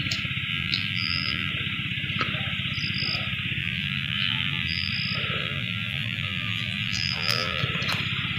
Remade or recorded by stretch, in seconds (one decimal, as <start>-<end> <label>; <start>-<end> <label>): 0.0-0.5 recorded; 0.5-1.5 remade; 1.5-3.6 recorded; 3.6-4.9 remade; 4.9-5.4 recorded; 5.4-7.6 remade; 7.6-8.4 recorded